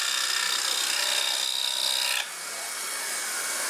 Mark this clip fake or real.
real